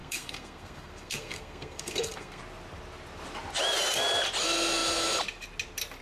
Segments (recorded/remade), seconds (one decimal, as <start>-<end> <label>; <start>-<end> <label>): 0.0-2.4 remade; 2.4-6.0 recorded